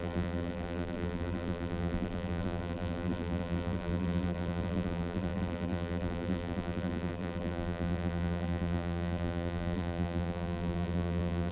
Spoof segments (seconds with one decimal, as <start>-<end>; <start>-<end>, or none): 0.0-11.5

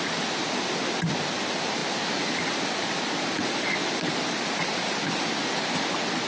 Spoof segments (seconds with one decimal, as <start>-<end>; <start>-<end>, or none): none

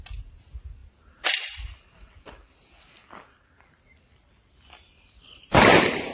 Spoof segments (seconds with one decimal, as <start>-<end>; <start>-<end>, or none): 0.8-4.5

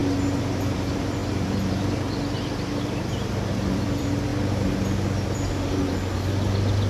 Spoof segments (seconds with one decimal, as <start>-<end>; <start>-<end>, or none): 0.6-4.3